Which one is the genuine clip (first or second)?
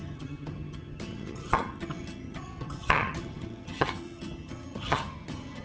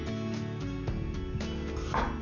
second